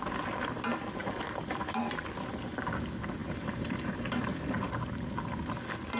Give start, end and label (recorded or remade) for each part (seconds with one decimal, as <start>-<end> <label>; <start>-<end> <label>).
0.0-1.0 recorded; 1.0-1.8 remade; 1.8-3.2 recorded; 3.2-5.1 remade; 5.1-6.0 recorded